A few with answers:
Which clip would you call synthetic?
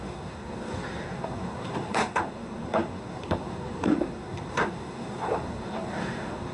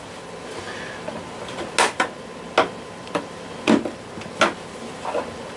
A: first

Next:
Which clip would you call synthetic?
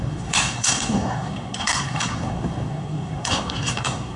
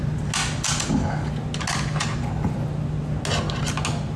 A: first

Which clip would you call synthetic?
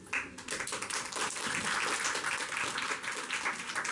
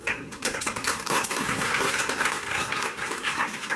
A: second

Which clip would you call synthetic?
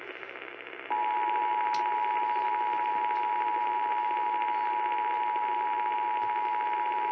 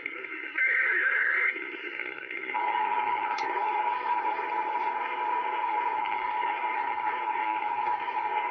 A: second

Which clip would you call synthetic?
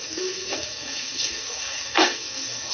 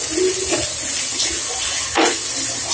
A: first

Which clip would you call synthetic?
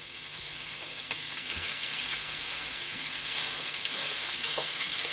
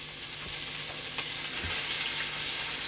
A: first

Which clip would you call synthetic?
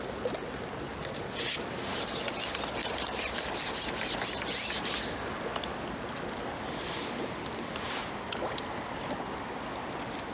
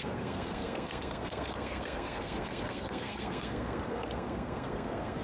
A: second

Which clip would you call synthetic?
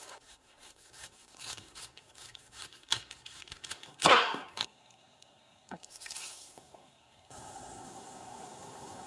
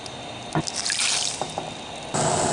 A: first